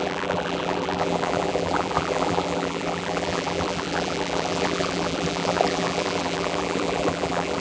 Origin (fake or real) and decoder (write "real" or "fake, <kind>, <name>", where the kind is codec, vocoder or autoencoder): fake, vocoder, BigVGAN v2